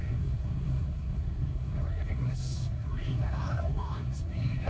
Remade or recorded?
remade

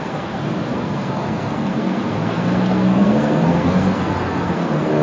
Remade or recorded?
remade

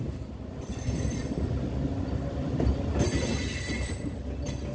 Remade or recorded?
recorded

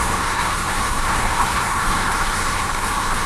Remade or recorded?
remade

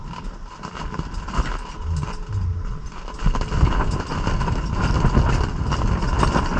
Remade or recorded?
recorded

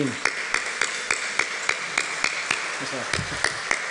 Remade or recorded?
recorded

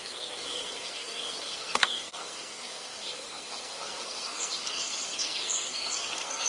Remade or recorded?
remade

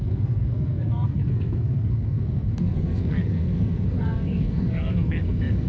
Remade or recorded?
remade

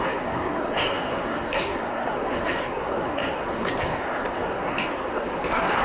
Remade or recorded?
remade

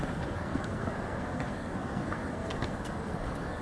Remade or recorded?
remade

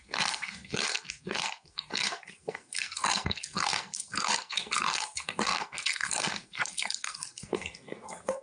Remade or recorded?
remade